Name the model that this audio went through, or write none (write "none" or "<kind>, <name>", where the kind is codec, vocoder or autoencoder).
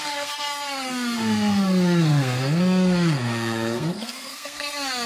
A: codec, SNAC